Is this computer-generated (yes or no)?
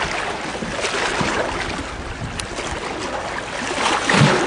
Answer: no